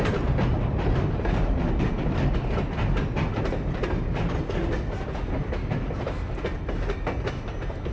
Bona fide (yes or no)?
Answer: yes